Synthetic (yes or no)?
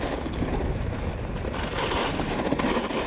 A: no